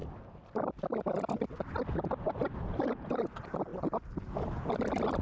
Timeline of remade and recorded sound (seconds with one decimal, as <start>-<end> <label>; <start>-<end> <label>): 0.0-3.7 recorded; 3.7-5.2 remade